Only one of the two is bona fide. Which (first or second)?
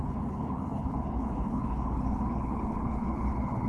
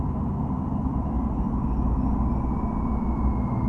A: second